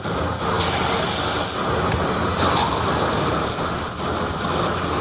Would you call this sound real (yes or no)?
yes